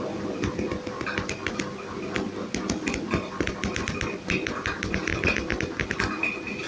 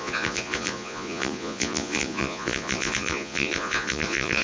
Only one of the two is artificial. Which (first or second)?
second